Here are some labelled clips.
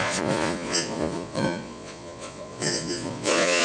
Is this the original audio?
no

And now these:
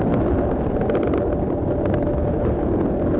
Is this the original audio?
yes